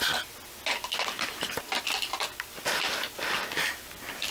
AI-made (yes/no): no